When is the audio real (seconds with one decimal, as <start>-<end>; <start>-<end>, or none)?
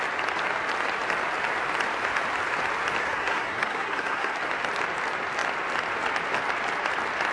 0.0-3.0; 4.3-7.3